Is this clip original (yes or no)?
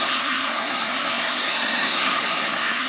no